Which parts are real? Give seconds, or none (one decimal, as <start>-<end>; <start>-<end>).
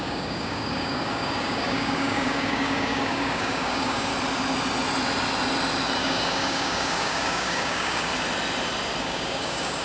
4.1-6.0; 8.1-9.0